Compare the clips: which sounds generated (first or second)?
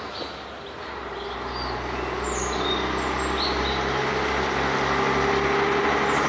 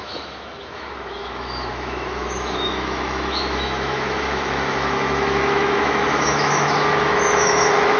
second